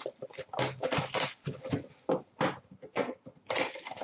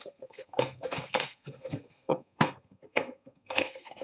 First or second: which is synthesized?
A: second